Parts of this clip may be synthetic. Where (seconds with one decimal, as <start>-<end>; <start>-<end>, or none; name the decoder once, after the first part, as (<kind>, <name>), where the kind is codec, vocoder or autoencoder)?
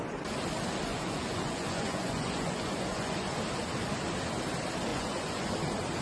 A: 0.9-3.4 (vocoder, Vocos); 4.9-5.5